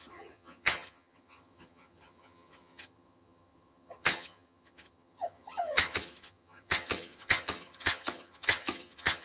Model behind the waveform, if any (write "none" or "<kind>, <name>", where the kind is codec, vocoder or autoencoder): vocoder, HiFi-GAN